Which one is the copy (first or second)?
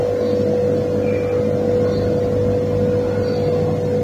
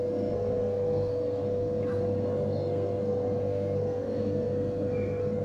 second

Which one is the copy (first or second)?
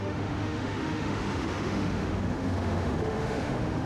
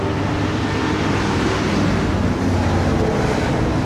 first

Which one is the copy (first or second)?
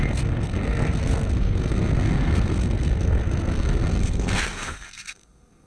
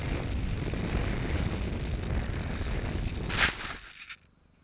first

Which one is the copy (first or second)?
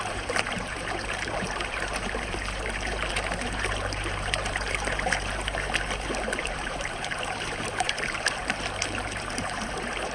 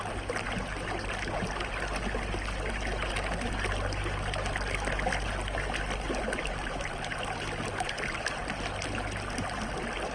first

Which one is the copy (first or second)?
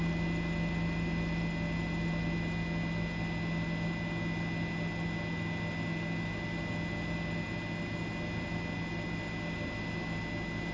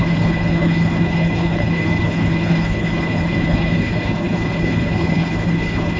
second